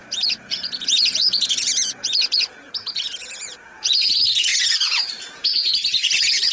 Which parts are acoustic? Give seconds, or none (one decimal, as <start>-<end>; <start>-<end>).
none